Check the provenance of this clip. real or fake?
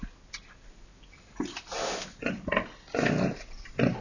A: real